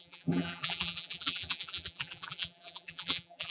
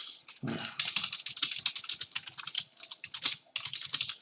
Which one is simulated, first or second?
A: first